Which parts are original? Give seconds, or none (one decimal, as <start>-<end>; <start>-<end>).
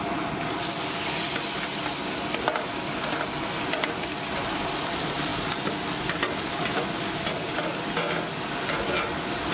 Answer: 0.0-9.5